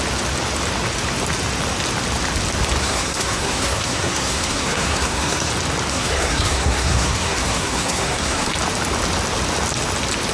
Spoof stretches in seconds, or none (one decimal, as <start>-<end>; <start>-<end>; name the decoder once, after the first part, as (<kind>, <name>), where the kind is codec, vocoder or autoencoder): 2.8-5.5 (codec, SNAC); 5.9-8.5